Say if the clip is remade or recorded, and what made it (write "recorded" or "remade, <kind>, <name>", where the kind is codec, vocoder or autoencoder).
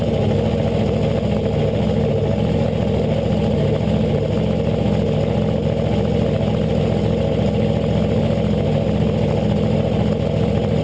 recorded